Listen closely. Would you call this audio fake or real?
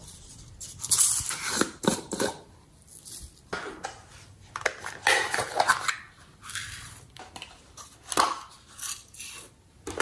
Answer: real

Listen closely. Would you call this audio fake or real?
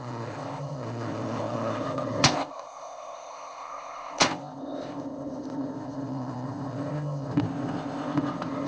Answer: fake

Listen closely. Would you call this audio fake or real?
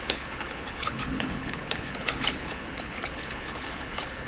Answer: fake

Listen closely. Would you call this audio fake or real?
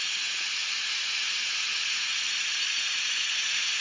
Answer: fake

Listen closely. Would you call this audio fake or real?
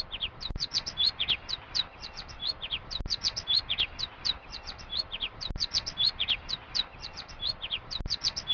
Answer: real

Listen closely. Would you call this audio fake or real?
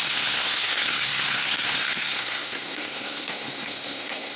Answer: fake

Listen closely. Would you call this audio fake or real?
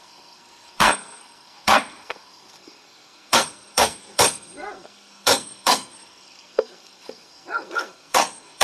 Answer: fake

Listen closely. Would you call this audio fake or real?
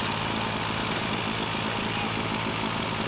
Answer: real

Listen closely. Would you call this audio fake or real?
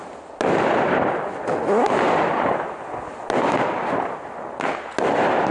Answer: real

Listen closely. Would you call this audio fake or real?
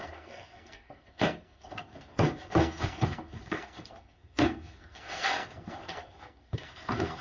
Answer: fake